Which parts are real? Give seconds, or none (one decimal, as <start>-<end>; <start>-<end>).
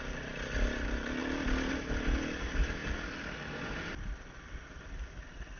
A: 0.0-5.6